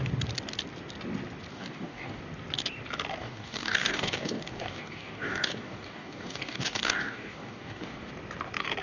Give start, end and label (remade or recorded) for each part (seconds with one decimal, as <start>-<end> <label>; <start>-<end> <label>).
0.0-1.5 recorded; 1.5-2.2 remade; 2.2-3.2 recorded; 3.2-8.1 remade; 8.1-8.8 recorded